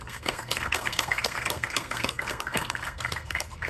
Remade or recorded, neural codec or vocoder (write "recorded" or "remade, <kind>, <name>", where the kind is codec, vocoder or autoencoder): remade, codec, SNAC